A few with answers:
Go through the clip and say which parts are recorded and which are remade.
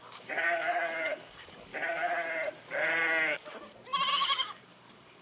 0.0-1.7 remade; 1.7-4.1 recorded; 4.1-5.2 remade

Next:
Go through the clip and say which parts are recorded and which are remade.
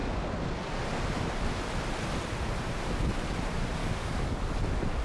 0.0-3.8 recorded; 3.8-4.4 remade; 4.4-5.0 recorded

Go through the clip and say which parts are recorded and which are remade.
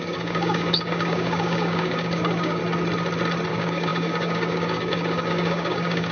0.0-2.6 remade; 2.6-3.5 recorded; 3.5-6.1 remade